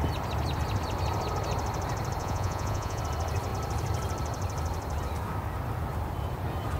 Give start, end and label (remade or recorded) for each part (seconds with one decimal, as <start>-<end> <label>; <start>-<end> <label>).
0.0-2.2 recorded; 2.2-3.0 remade; 3.0-6.8 recorded